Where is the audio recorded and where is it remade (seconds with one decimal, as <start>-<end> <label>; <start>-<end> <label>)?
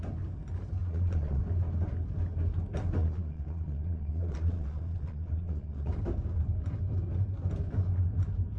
0.0-0.8 recorded; 0.8-1.4 remade; 1.4-3.0 recorded; 3.0-5.9 remade; 5.9-8.6 recorded